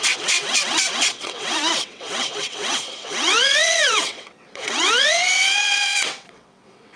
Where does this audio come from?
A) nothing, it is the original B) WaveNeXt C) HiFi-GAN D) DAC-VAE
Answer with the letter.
B